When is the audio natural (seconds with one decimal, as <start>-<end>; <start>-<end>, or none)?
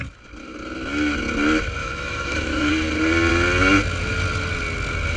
0.0-1.8; 2.7-5.2